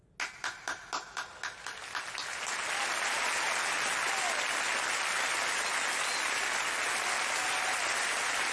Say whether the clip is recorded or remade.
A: recorded